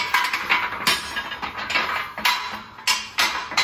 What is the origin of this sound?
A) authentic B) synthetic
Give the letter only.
A